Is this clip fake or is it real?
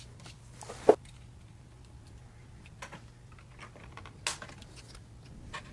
real